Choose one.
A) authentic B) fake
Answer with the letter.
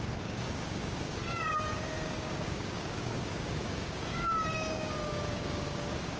B